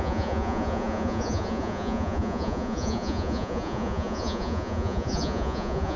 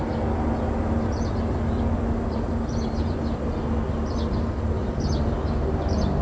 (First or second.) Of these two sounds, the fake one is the first